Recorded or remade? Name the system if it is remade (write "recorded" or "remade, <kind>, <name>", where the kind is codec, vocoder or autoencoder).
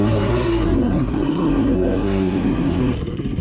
remade, codec, SNAC